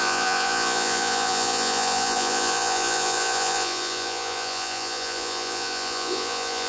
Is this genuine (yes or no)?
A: no